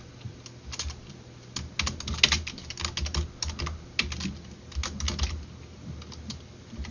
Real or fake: real